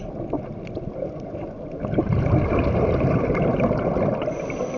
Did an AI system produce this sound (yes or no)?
no